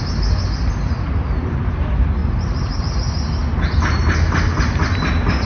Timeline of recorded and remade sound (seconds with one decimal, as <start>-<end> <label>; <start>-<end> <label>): 0.0-2.2 recorded; 2.2-2.8 remade; 2.8-5.4 recorded